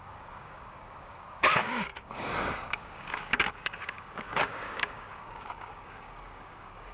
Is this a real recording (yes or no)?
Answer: no